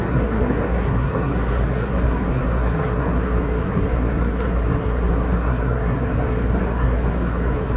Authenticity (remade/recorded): remade